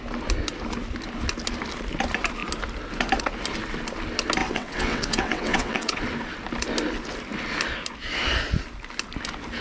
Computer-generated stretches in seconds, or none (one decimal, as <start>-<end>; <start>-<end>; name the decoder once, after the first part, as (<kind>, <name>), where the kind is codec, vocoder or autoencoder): 4.4-6.0 (vocoder, WaveNeXt)